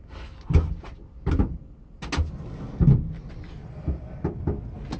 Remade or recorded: recorded